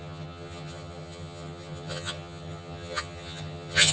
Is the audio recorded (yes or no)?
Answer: no